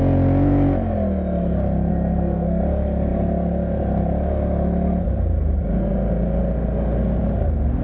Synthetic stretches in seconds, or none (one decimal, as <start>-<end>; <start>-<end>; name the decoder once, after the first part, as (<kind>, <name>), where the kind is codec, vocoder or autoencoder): 1.9-2.6 (codec, SNAC)